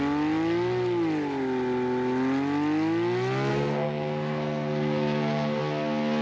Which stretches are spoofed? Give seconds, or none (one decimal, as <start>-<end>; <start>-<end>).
3.5-5.6